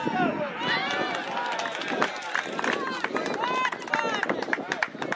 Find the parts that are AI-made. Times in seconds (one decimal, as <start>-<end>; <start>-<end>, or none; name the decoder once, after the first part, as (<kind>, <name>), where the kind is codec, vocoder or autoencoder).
none